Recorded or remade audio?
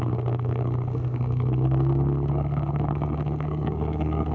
remade